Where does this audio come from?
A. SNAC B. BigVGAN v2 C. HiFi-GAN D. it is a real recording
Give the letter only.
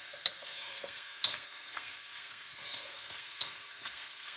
A